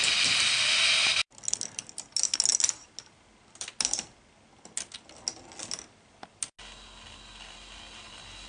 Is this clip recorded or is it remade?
recorded